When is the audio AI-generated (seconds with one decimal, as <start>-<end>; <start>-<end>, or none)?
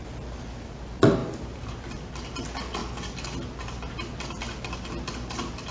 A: 1.2-2.1